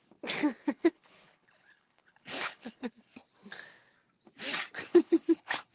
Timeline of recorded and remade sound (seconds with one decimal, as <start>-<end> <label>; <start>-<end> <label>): 0.0-0.6 recorded; 0.6-2.9 remade; 2.9-4.9 recorded; 4.9-5.7 remade